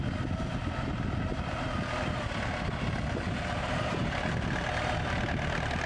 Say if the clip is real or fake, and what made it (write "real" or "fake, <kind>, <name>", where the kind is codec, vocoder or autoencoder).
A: real